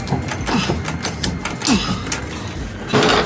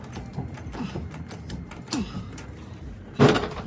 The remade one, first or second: second